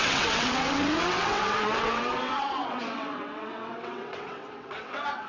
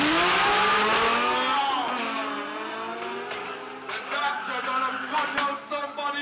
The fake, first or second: first